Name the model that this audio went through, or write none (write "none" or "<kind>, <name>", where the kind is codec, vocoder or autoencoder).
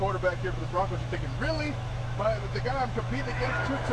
autoencoder, DAC-VAE